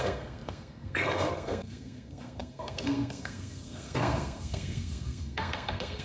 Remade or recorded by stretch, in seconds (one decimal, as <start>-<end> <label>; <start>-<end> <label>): 0.0-6.0 remade